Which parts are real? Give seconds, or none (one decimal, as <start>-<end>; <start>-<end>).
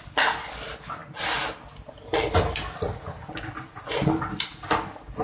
0.0-5.2